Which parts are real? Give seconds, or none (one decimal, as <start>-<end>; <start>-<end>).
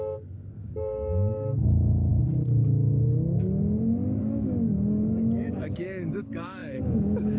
2.1-4.2